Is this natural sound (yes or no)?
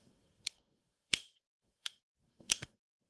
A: no